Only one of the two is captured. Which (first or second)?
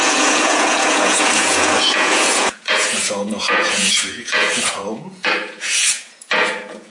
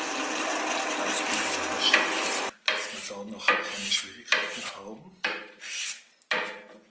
second